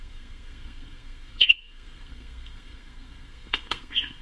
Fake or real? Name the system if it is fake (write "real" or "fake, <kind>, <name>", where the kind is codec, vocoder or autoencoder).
fake, codec, SNAC